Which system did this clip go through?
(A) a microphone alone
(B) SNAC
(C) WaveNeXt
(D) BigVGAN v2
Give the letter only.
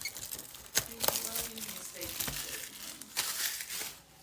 A